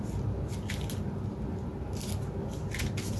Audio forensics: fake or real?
real